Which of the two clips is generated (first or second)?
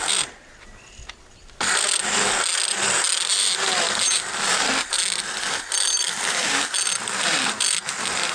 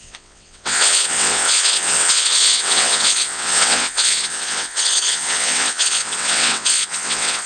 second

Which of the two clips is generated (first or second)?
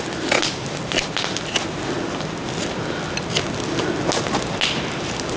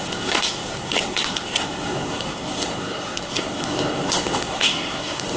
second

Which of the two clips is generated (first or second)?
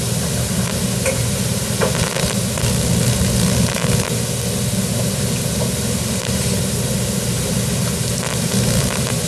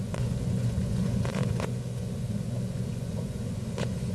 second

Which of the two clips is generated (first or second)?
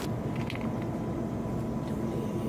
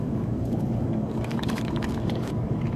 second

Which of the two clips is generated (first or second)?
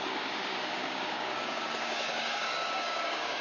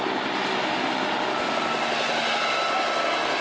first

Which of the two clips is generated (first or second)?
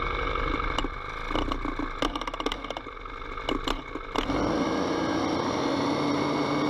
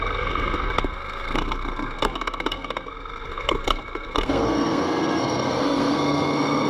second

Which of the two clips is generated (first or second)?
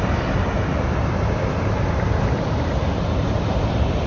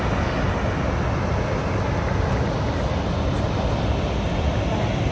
first